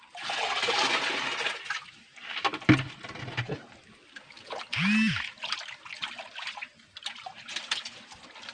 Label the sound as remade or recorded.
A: recorded